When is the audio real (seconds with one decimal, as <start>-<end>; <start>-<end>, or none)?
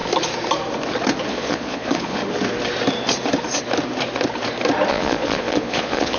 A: 0.0-1.3; 2.2-4.9